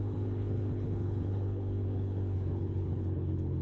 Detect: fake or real fake